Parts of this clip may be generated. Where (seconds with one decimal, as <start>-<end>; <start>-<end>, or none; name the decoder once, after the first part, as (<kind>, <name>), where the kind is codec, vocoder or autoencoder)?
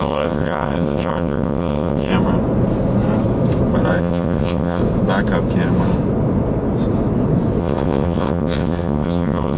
0.0-2.1 (vocoder, WaveNeXt); 4.0-4.8; 7.6-9.6